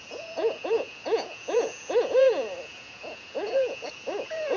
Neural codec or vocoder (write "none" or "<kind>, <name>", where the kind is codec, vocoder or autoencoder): vocoder, Vocos